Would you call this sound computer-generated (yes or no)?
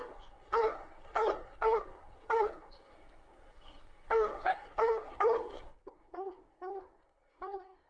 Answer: yes